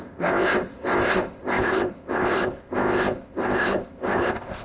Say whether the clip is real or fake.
fake